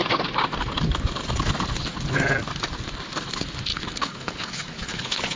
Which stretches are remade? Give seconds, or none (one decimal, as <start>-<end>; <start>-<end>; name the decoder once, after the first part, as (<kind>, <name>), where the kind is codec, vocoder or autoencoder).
3.7-5.4 (codec, HILCodec)